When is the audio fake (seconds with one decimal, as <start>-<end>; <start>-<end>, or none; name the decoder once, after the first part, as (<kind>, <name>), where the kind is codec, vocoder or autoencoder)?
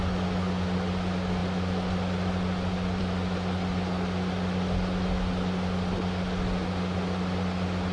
none